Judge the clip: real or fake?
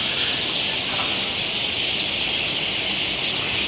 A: real